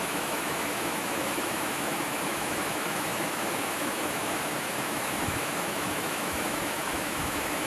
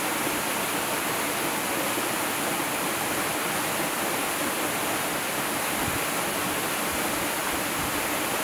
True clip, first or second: second